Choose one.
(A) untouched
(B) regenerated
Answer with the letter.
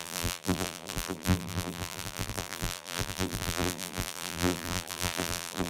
B